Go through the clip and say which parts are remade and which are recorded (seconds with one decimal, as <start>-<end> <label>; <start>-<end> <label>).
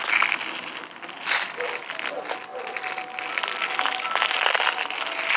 0.0-5.4 recorded